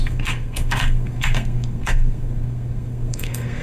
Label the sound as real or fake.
fake